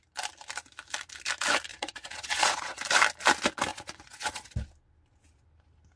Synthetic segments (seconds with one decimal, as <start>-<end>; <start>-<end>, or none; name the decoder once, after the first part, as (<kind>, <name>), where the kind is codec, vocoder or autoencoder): 1.7-2.8 (vocoder, WaveNeXt); 3.7-4.5